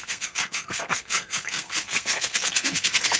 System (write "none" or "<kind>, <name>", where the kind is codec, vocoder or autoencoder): codec, SNAC